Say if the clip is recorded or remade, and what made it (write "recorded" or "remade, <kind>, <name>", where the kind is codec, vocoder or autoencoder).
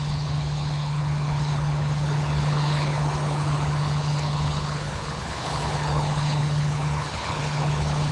remade, codec, HILCodec